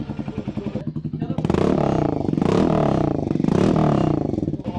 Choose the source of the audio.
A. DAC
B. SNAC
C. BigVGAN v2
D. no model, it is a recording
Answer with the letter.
D